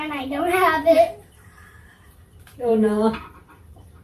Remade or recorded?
remade